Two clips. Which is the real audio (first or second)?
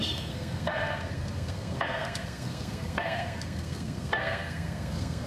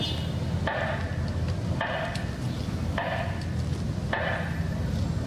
second